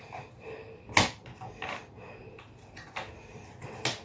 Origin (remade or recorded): recorded